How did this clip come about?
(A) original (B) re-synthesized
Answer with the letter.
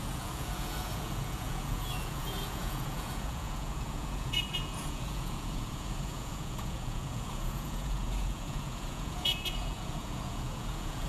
B